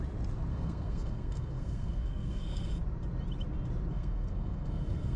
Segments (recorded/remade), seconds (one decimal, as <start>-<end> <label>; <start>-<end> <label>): 0.0-0.5 recorded; 0.5-2.7 remade; 2.7-3.9 recorded; 3.9-5.2 remade

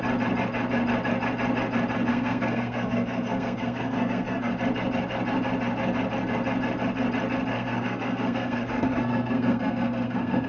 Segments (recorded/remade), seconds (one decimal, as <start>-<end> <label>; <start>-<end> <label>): 0.0-2.1 recorded; 2.1-4.5 remade; 4.5-7.5 recorded; 7.5-10.5 remade